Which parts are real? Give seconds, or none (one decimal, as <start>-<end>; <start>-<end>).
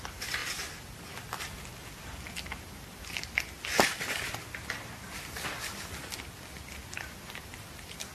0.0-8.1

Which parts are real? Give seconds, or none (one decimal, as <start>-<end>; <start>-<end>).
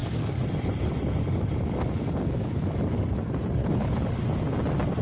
0.0-3.6; 4.1-5.0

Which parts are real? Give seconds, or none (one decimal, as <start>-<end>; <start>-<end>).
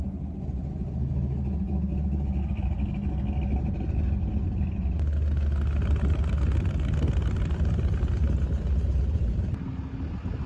0.0-10.5